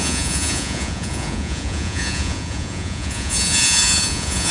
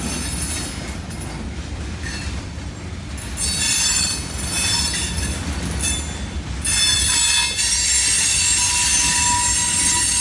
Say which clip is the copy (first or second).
first